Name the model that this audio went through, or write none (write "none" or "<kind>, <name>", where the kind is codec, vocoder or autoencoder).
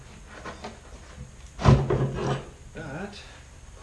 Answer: none